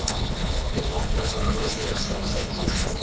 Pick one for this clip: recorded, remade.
remade